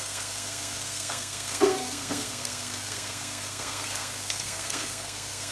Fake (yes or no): yes